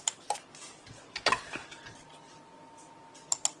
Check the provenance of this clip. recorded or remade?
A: recorded